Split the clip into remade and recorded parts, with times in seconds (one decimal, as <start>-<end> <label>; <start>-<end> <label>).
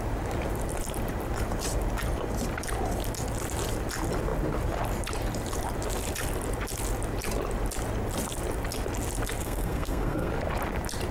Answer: 0.0-9.4 recorded; 9.4-10.3 remade; 10.3-11.1 recorded